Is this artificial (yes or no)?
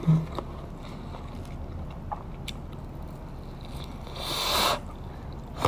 no